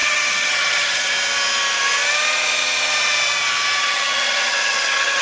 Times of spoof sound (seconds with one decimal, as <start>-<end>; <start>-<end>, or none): 0.0-1.1; 3.8-5.2